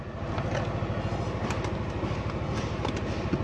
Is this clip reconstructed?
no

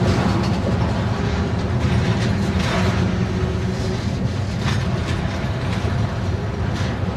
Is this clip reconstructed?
no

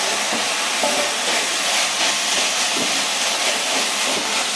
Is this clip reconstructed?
no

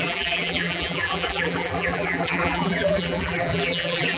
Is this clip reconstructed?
yes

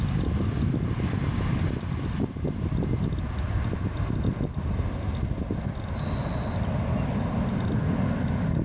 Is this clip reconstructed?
no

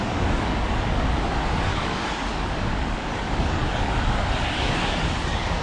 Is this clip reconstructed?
yes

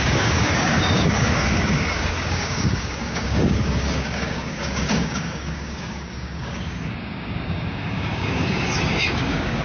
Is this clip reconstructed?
yes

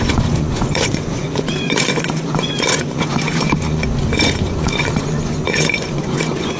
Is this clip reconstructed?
yes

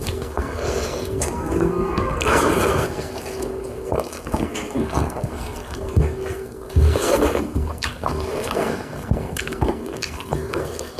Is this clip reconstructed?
yes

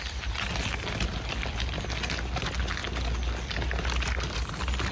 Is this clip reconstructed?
no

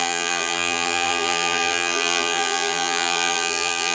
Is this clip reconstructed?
yes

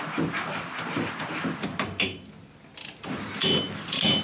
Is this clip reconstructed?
no